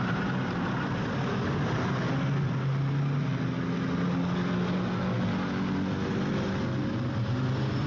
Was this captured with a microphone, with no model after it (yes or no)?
yes